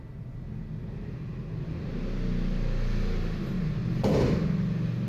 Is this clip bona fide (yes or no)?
yes